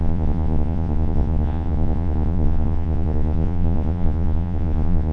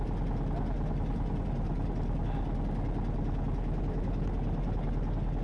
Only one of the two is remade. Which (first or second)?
first